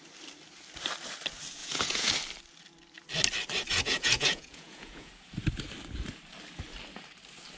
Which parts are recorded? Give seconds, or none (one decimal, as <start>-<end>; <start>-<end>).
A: 0.0-1.6; 2.1-3.7; 5.1-7.6